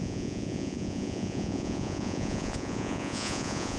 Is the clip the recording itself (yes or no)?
no